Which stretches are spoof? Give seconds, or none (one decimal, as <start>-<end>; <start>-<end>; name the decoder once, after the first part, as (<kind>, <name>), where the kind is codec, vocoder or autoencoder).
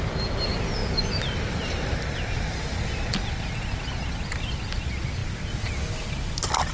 none